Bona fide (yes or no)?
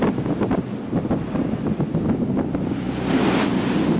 yes